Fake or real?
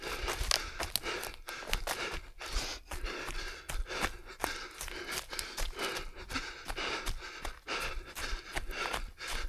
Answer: real